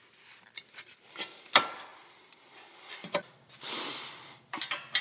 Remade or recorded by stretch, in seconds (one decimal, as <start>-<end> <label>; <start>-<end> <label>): 0.0-5.0 remade